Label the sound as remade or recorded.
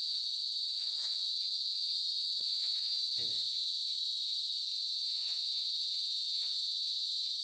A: remade